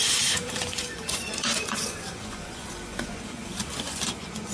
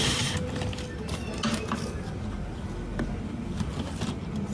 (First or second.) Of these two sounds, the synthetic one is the first